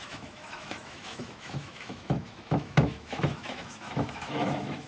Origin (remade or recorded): remade